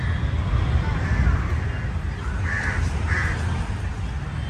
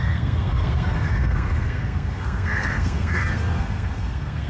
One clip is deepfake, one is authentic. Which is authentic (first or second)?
first